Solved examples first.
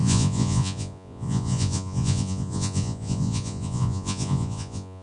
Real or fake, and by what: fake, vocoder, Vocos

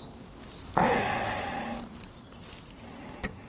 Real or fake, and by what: real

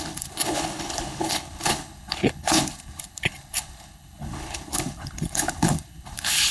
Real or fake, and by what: fake, codec, HILCodec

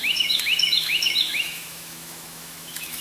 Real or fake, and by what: fake, autoencoder, DAC-VAE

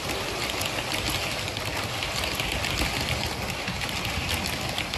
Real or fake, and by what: real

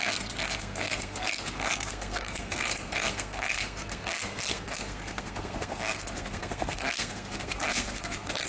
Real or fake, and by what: fake, codec, SNAC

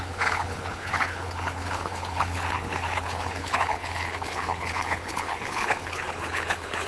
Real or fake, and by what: fake, codec, HILCodec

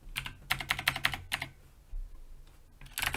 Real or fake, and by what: real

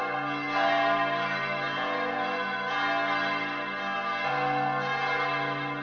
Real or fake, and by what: real